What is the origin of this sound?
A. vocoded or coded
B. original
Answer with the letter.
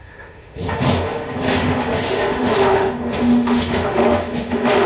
A